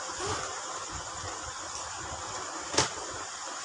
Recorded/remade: recorded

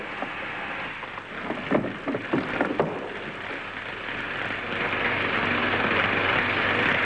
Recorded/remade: recorded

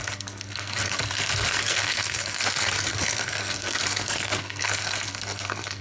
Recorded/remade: remade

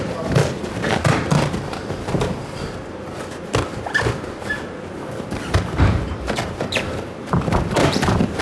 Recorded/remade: remade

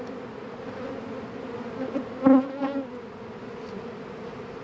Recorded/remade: recorded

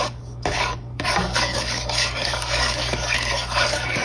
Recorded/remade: remade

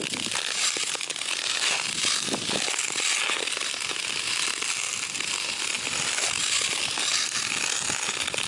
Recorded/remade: recorded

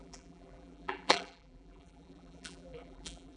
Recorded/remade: remade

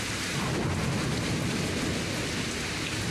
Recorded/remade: recorded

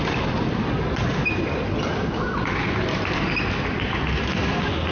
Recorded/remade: recorded